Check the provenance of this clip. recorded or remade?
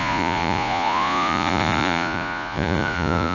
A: remade